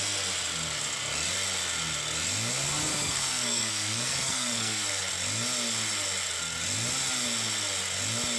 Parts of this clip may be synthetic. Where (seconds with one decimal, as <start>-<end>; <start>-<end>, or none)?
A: 2.9-5.1